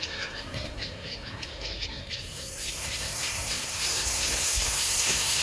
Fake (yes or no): yes